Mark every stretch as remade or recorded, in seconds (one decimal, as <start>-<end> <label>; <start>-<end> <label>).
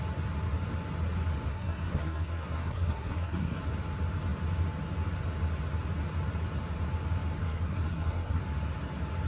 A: 0.0-1.5 recorded; 1.5-3.6 remade; 3.6-7.4 recorded; 7.4-8.4 remade; 8.4-9.3 recorded